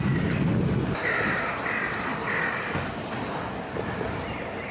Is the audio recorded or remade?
recorded